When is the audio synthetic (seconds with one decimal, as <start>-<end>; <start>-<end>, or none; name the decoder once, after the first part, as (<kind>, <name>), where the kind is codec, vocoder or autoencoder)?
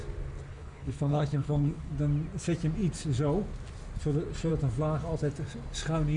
0.5-1.9 (codec, HILCodec)